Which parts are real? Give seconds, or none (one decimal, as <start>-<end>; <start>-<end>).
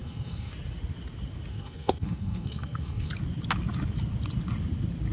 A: 0.5-1.5; 3.1-5.1